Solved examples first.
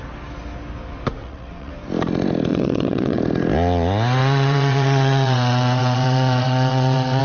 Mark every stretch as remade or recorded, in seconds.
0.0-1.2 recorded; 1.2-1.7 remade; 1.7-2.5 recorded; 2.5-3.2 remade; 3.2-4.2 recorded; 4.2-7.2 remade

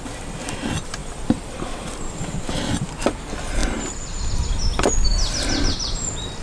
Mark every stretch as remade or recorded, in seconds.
0.0-6.4 recorded

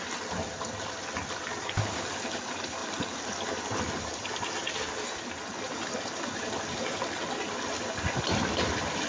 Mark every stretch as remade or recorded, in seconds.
0.0-9.1 recorded

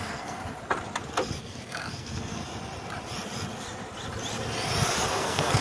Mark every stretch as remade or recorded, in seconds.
0.0-0.4 remade; 0.4-1.4 recorded; 1.4-2.4 remade; 2.4-5.1 recorded; 5.1-5.6 remade

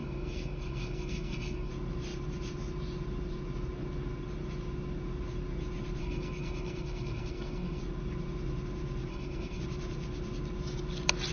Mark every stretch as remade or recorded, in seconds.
0.0-1.7 remade; 1.7-6.0 recorded; 6.0-7.8 remade; 7.8-9.1 recorded; 9.1-9.6 remade; 9.6-11.3 recorded

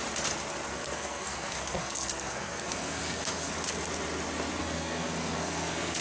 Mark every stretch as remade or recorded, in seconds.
0.0-0.7 recorded; 0.7-3.5 remade; 3.5-4.6 recorded; 4.6-6.0 remade